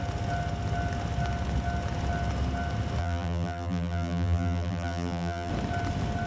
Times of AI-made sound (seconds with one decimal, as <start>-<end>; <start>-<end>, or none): 3.0-5.5